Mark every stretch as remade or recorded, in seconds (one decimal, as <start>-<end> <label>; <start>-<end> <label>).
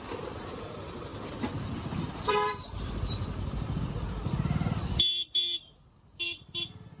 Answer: 0.0-1.1 recorded; 1.1-3.9 remade; 3.9-7.0 recorded